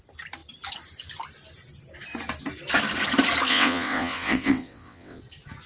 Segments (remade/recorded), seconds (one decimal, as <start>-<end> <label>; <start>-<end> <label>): 0.0-3.5 recorded; 3.5-5.2 remade; 5.2-5.7 recorded